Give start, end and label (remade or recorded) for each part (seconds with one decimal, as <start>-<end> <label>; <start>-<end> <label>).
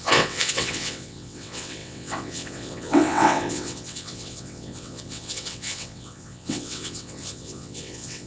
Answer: 0.0-8.3 remade